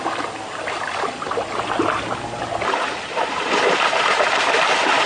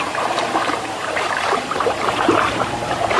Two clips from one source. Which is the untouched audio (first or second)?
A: first